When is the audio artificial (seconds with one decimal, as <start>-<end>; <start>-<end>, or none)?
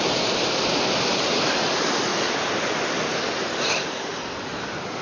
0.0-2.1; 3.2-4.1